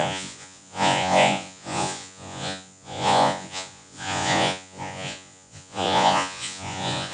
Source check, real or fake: fake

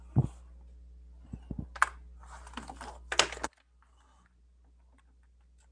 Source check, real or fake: real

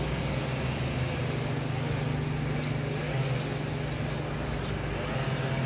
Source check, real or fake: real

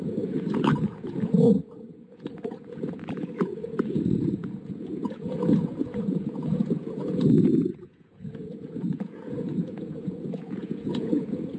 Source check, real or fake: fake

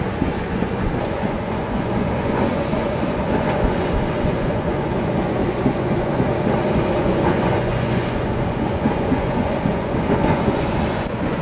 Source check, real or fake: fake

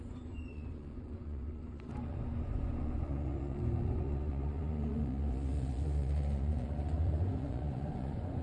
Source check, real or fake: fake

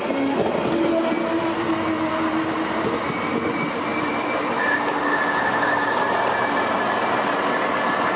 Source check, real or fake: real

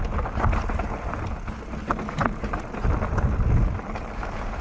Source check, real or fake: real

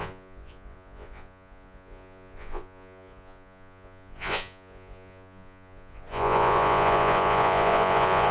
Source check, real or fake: fake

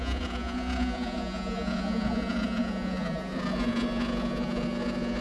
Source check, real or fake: fake